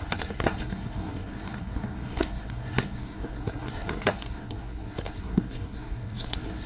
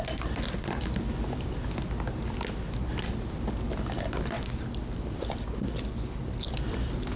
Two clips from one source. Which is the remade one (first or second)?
first